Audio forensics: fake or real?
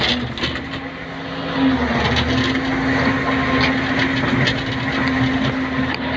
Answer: real